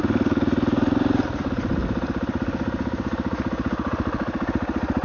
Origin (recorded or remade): recorded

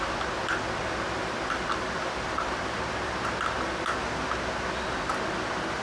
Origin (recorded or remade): recorded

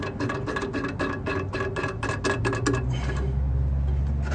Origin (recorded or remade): recorded